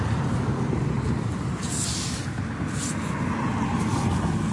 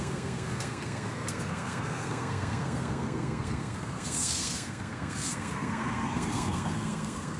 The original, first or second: first